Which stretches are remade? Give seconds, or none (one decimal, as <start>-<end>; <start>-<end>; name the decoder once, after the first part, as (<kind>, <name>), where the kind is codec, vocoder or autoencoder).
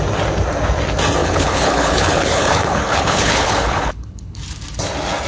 1.2-4.4 (codec, HILCodec)